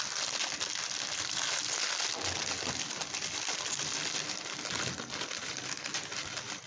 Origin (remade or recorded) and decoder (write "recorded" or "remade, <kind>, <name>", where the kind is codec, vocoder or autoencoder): recorded